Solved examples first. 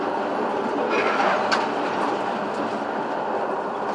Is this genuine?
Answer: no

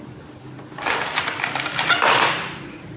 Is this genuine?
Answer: yes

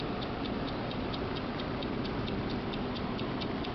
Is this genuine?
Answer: no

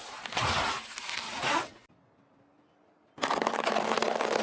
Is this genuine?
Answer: yes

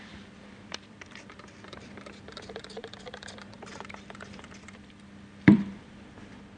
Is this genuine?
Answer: no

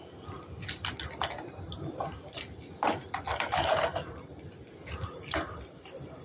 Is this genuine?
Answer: no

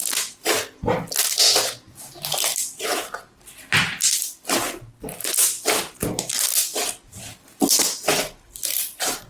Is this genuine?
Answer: yes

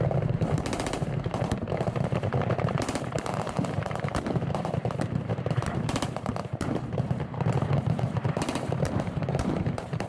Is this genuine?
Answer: no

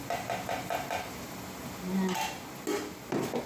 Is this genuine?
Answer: yes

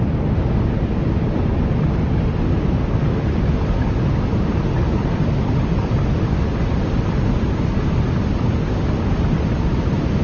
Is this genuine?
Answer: yes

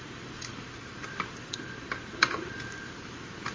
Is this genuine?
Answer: no